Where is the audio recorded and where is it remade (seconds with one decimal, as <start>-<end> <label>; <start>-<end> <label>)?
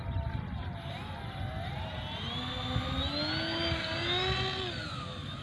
0.0-5.4 recorded